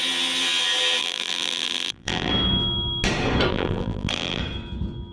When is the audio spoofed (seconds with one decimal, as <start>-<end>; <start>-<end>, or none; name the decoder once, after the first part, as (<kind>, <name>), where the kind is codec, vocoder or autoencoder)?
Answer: 1.0-2.3 (vocoder, BigVGAN v2); 3.5-4.4